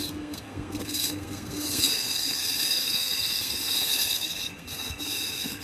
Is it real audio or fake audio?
fake